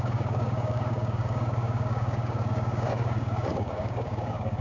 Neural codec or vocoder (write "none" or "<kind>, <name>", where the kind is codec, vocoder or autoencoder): codec, DAC